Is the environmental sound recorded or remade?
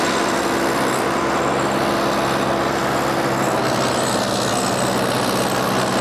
recorded